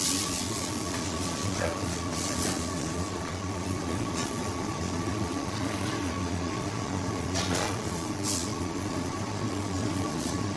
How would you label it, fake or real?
fake